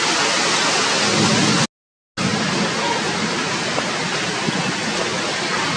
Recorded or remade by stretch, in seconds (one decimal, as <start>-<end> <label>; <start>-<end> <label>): 0.0-5.8 recorded